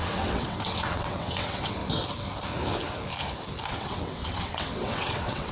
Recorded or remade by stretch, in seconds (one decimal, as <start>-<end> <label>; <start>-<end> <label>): 0.0-1.8 remade; 1.8-3.7 recorded; 3.7-5.5 remade